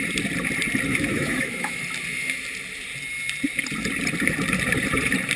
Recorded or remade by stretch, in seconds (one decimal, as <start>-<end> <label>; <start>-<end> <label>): 0.0-0.9 recorded; 0.9-1.8 remade; 1.8-5.4 recorded